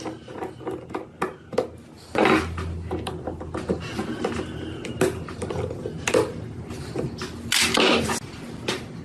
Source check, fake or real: real